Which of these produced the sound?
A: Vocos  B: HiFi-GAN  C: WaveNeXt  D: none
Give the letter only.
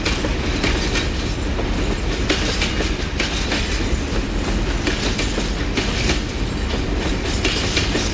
D